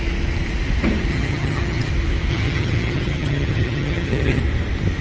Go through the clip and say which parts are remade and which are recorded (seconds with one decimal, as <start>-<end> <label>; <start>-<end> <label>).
0.0-1.1 recorded; 1.1-1.9 remade; 1.9-2.3 recorded; 2.3-4.4 remade; 4.4-5.0 recorded